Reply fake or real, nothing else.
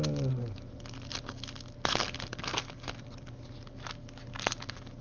real